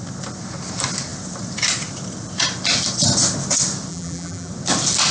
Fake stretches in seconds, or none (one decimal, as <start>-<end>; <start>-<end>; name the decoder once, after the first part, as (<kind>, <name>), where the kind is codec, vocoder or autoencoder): 3.9-4.5 (vocoder, BigVGAN v2)